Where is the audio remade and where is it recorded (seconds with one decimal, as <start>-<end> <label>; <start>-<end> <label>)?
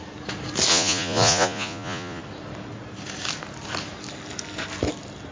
0.0-0.7 recorded; 0.7-2.2 remade; 2.2-5.3 recorded